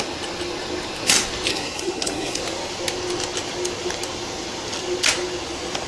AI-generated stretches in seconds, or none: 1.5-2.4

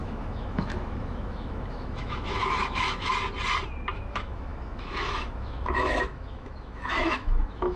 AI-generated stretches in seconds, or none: 0.0-3.1; 3.9-7.8

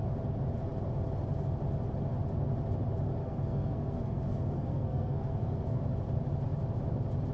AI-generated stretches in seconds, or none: 3.2-5.8

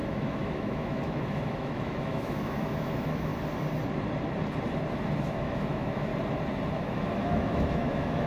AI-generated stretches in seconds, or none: 0.0-3.3; 5.2-6.1; 6.7-8.3